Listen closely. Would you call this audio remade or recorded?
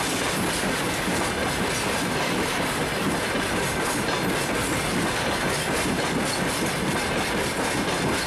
recorded